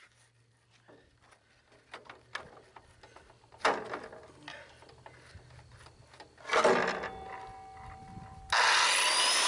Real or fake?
real